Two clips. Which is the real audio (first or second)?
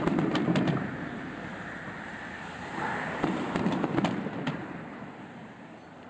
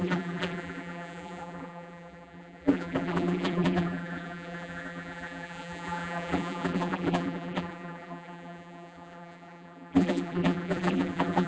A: first